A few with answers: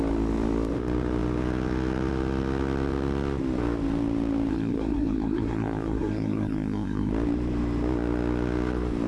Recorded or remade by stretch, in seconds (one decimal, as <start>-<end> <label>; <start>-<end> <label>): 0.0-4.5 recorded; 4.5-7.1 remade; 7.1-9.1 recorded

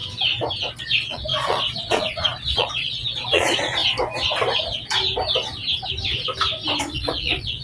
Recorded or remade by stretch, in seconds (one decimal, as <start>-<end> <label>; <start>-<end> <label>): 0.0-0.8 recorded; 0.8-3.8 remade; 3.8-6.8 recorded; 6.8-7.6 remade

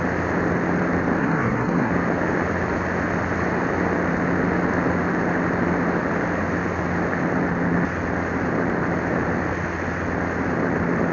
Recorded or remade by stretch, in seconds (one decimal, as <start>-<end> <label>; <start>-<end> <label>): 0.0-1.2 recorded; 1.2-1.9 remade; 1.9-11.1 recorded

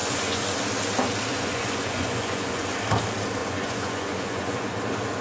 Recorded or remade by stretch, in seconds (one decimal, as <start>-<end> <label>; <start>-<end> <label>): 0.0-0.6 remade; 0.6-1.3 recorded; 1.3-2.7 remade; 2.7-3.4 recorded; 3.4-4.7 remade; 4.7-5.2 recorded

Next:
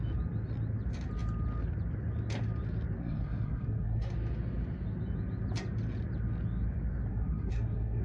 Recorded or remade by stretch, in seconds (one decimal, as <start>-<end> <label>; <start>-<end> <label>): 0.0-3.0 recorded; 3.0-4.1 remade; 4.1-7.1 recorded; 7.1-8.0 remade

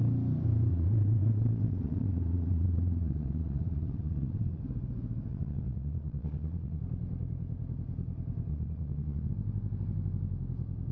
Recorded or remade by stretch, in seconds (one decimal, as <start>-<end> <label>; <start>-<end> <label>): 0.0-0.7 recorded; 0.7-4.6 remade; 4.6-5.3 recorded; 5.3-6.8 remade; 6.8-8.5 recorded; 8.5-9.3 remade; 9.3-10.9 recorded

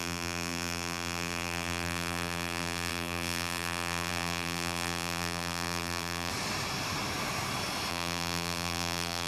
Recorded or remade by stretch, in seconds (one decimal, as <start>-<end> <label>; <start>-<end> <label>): 0.0-6.3 remade; 6.3-7.9 recorded; 7.9-9.3 remade

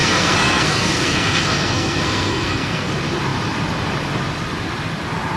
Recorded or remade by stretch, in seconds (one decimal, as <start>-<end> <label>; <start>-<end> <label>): 0.0-2.9 remade; 2.9-5.4 recorded